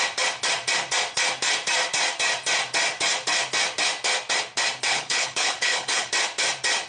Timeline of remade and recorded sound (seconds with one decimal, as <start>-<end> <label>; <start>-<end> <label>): 0.0-4.9 recorded; 4.9-6.1 remade; 6.1-6.9 recorded